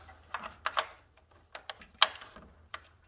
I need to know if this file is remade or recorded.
recorded